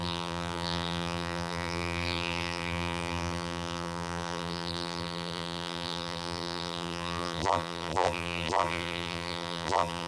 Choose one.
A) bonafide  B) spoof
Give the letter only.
B